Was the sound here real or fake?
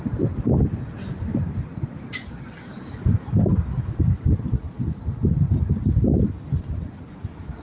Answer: real